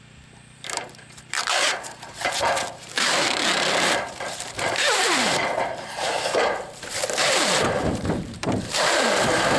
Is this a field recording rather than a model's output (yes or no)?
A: no